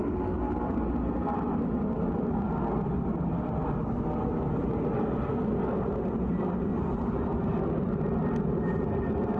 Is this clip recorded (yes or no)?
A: yes